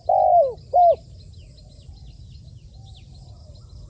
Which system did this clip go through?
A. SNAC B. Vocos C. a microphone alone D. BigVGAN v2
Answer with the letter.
C